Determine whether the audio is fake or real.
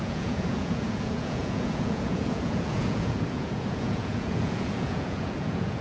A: fake